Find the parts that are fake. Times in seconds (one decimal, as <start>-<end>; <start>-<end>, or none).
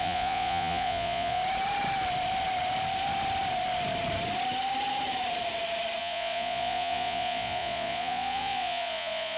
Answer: 0.0-1.4; 6.0-9.4